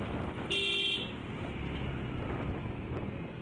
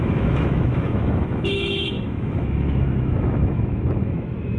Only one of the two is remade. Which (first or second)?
second